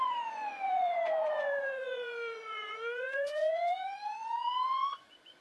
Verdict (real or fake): fake